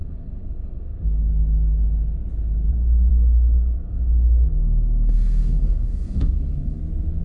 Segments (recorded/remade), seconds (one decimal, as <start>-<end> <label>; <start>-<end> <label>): 0.0-1.2 remade; 1.2-3.1 recorded; 3.1-6.8 remade; 6.8-7.2 recorded